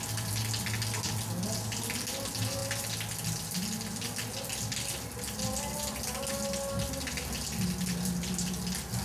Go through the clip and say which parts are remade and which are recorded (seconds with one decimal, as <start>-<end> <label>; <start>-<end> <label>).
0.0-9.0 recorded